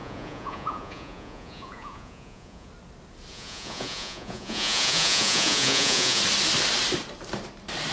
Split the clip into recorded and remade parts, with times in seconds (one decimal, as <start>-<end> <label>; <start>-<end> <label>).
0.0-2.7 remade; 2.7-3.3 recorded; 3.3-6.2 remade; 6.2-7.9 recorded